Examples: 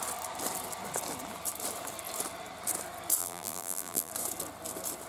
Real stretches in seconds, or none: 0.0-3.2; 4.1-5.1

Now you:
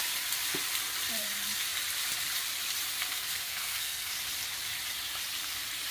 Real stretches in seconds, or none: 0.0-3.1; 4.1-5.9

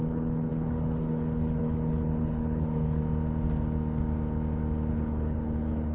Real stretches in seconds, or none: 3.0-4.9

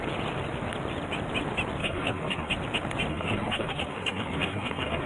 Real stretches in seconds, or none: 0.0-1.8; 2.5-3.1

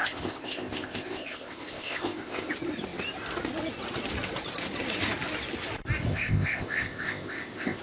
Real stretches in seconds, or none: 2.5-6.1